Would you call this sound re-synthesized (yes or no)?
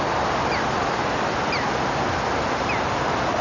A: no